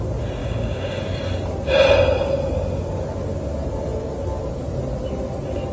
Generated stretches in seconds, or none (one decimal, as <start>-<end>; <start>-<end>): 0.4-1.0